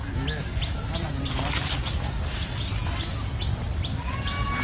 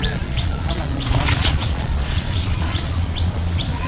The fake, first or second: second